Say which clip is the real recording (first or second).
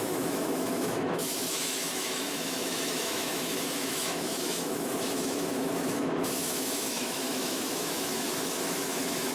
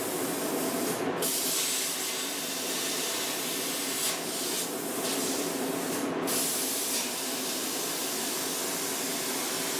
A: second